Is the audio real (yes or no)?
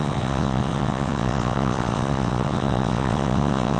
no